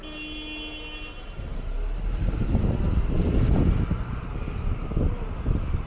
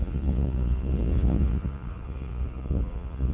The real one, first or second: first